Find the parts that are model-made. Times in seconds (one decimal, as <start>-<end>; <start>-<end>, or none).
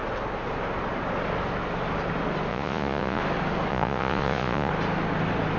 2.5-3.2; 3.7-4.7